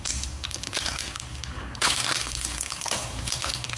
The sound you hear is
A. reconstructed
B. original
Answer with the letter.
A